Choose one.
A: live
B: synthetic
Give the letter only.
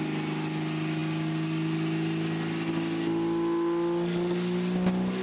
A